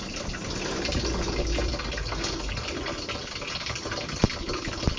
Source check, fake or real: real